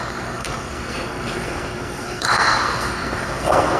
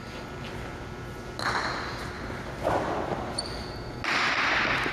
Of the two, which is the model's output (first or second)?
first